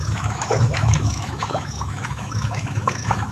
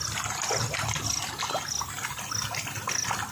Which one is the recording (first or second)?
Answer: second